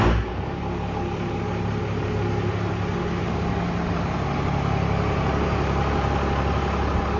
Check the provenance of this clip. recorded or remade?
recorded